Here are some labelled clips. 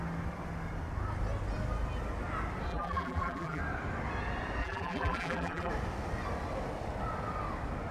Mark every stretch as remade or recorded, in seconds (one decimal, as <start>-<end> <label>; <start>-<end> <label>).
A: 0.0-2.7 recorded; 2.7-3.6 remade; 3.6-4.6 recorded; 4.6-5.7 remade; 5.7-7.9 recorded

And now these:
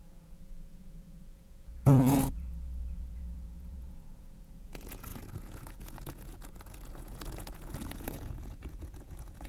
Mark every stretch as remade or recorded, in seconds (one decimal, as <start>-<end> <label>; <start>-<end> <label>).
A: 0.0-9.5 remade

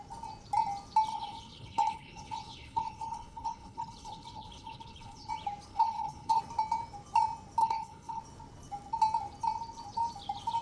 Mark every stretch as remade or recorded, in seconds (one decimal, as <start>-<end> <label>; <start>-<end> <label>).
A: 0.0-1.1 recorded; 1.1-5.3 remade; 5.3-5.7 recorded; 5.7-6.4 remade; 6.4-7.6 recorded; 7.6-8.2 remade; 8.2-10.6 recorded

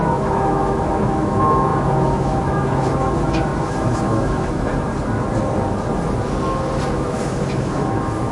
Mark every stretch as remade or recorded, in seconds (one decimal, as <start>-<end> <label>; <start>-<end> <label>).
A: 0.0-4.7 remade; 4.7-6.9 recorded; 6.9-8.3 remade

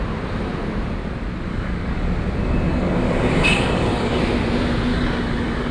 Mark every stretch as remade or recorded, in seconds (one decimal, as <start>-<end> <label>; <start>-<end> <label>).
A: 0.0-1.5 recorded; 1.5-2.1 remade; 2.1-2.7 recorded; 2.7-4.2 remade; 4.2-4.9 recorded; 4.9-5.7 remade